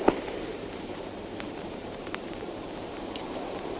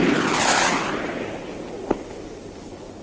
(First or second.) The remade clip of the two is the first